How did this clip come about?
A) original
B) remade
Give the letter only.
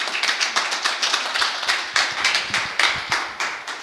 A